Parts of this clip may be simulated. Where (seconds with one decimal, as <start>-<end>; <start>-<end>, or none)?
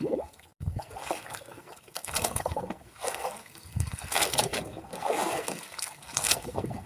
0.0-6.9